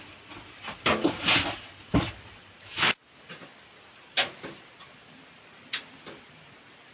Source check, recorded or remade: recorded